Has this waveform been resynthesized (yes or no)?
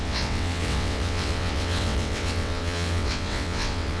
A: yes